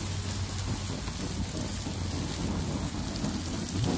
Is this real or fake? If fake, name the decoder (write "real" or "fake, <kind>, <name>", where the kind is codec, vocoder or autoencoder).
real